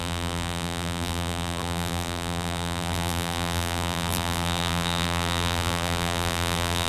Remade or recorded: remade